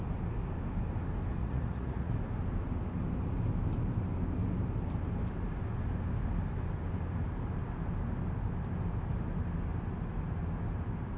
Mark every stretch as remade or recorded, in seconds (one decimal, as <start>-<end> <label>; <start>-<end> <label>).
0.0-1.4 recorded; 1.4-2.1 remade; 2.1-11.2 recorded